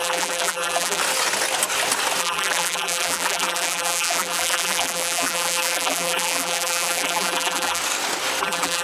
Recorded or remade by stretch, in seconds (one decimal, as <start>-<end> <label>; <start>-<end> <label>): 0.0-1.0 remade; 1.0-2.2 recorded; 2.2-7.8 remade; 7.8-8.4 recorded; 8.4-8.8 remade